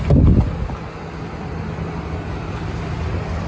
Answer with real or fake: real